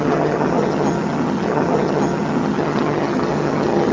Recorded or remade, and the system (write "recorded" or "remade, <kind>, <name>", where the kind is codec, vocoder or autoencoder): remade, vocoder, HiFi-GAN